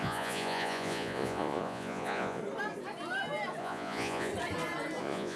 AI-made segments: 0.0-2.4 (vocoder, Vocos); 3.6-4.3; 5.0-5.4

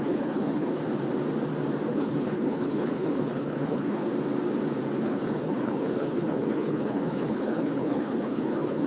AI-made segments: 0.0-0.8 (codec, HILCodec); 1.9-4.1; 5.0-8.9

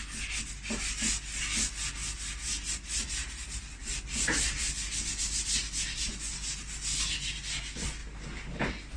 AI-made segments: none

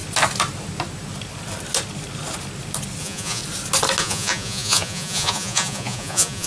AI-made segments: 3.0-3.4 (vocoder, Vocos); 4.0-6.5

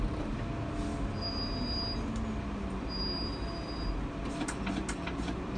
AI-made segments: none